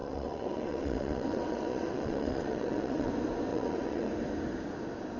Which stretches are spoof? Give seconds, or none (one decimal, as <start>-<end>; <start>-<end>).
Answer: 0.0-3.1; 3.5-4.1